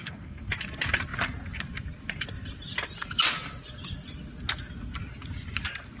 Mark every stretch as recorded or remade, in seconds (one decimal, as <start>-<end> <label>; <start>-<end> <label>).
0.0-0.5 remade; 0.5-6.0 recorded